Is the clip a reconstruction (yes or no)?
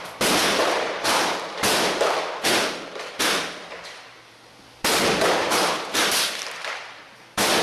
yes